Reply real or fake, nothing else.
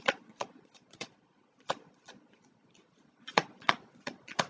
fake